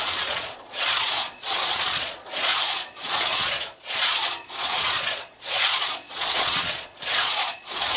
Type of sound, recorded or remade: remade